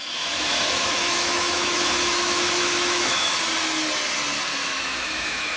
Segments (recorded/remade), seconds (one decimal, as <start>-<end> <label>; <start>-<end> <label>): 0.0-3.4 remade; 3.4-4.6 recorded; 4.6-5.6 remade